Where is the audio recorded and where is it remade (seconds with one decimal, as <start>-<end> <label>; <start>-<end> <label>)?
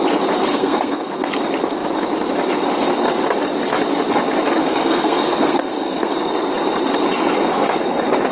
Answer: 0.0-0.5 recorded; 0.5-1.3 remade; 1.3-4.6 recorded; 4.6-6.1 remade; 6.1-8.3 recorded